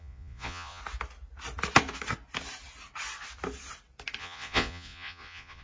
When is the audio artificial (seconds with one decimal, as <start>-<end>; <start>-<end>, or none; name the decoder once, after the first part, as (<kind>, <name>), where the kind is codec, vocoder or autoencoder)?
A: 0.0-0.8 (vocoder, Vocos); 4.2-5.6